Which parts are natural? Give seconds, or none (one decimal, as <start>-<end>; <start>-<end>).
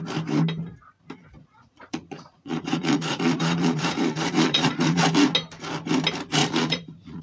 0.0-1.4; 5.0-6.4